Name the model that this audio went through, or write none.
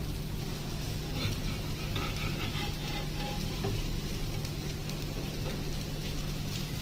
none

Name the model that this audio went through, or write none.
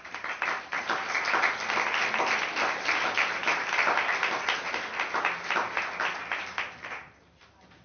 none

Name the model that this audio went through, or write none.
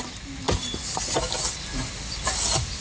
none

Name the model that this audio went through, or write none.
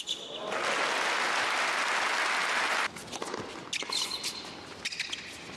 none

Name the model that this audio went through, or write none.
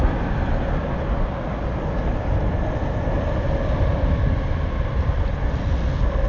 none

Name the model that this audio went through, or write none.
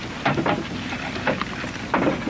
none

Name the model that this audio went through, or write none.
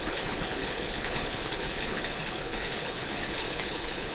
codec, HILCodec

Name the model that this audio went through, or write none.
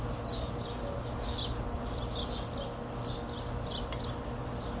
none